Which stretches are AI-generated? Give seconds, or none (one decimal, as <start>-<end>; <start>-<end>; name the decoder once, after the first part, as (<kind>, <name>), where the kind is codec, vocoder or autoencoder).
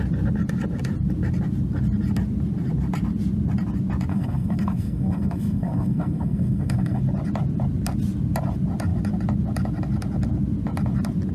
4.1-7.0 (codec, SNAC)